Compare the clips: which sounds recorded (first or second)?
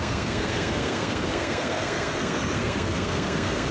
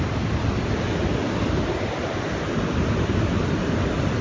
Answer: second